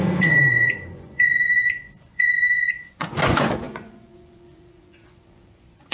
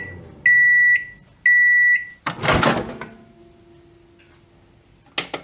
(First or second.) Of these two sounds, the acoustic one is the second